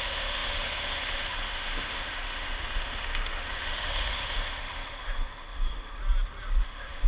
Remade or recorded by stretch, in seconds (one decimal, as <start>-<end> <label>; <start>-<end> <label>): 0.0-6.0 remade; 6.0-6.6 recorded; 6.6-7.1 remade